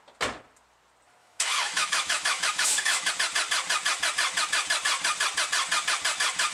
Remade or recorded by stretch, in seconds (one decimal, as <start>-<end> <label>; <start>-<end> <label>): 0.0-1.2 recorded; 1.2-3.1 remade; 3.1-6.5 recorded